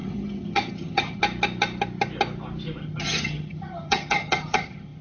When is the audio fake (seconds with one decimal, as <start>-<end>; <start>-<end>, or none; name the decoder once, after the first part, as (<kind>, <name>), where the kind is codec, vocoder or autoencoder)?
0.0-1.2 (vocoder, HiFi-GAN); 2.8-5.0